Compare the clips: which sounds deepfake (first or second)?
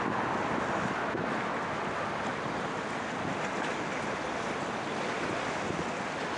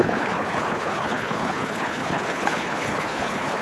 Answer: second